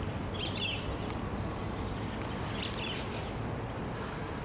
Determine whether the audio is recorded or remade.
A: recorded